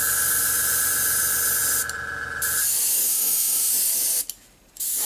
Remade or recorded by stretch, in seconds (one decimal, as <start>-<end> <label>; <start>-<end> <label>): 0.0-3.1 recorded; 3.1-3.7 remade; 3.7-5.0 recorded